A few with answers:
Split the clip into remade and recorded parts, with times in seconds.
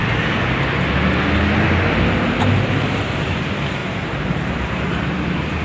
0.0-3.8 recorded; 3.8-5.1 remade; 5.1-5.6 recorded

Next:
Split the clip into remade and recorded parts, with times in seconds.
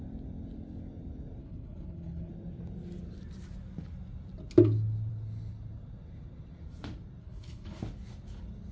0.0-1.4 recorded; 1.4-2.3 remade; 2.3-7.2 recorded; 7.2-7.8 remade; 7.8-8.7 recorded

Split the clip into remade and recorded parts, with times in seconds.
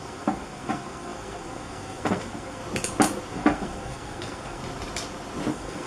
0.0-2.6 remade; 2.6-3.3 recorded; 3.3-4.6 remade; 4.6-5.5 recorded; 5.5-5.9 remade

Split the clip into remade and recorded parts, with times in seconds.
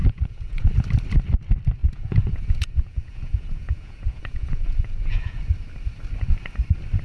0.0-0.7 remade; 0.7-1.8 recorded; 1.8-5.4 remade; 5.4-7.0 recorded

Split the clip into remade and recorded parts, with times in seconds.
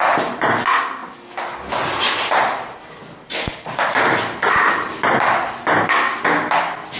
0.0-7.0 recorded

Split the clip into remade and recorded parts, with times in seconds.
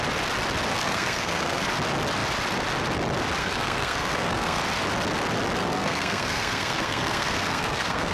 0.0-0.7 recorded; 0.7-1.7 remade; 1.7-3.4 recorded; 3.4-4.6 remade; 4.6-5.6 recorded; 5.6-8.1 remade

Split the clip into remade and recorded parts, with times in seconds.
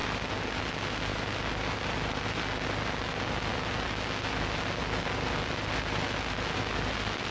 0.0-7.3 recorded